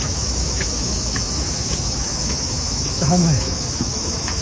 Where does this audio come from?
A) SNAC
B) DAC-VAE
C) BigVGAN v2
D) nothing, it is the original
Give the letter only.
B